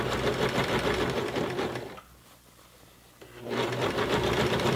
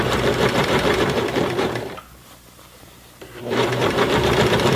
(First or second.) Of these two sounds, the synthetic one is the second